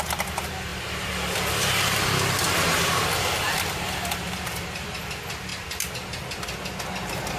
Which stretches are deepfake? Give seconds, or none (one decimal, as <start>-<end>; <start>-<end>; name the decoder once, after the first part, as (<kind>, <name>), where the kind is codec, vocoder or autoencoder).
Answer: 0.7-5.1 (vocoder, BigVGAN v2); 5.5-6.8